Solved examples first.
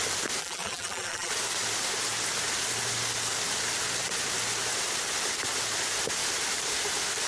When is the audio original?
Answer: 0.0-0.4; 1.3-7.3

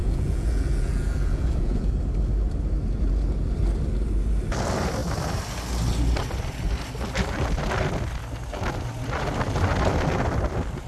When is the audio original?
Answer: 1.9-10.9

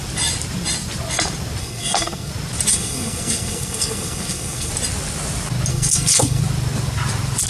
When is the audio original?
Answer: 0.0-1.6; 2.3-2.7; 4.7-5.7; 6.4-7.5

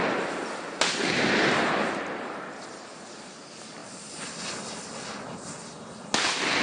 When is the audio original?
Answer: 0.0-6.6